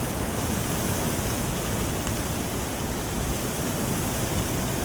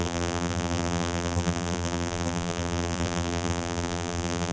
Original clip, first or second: first